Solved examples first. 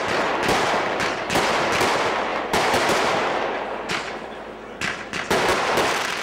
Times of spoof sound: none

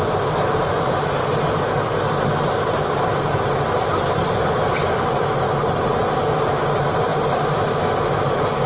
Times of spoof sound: none

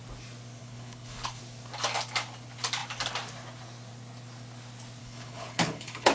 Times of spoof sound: 0.6-1.4 (codec, HILCodec); 5.0-6.1

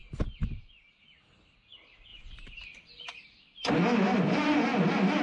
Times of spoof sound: 2.1-3.7 (vocoder, BigVGAN v2)